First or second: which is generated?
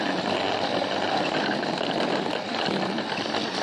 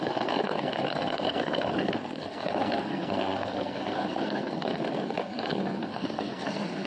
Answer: second